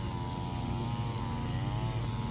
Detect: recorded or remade recorded